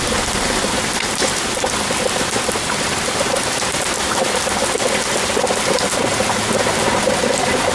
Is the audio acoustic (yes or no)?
yes